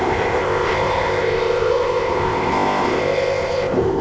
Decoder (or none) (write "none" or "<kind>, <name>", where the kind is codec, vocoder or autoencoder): codec, ZipCodec